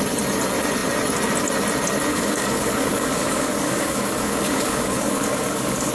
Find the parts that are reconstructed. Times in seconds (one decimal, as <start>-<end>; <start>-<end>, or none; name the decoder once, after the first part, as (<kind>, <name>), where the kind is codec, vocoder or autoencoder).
2.1-5.9 (codec, DAC)